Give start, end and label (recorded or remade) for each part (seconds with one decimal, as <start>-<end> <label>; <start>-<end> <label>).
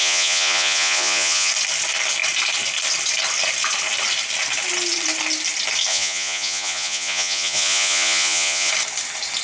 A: 0.0-1.5 remade; 1.5-5.9 recorded; 5.9-8.7 remade; 8.7-9.4 recorded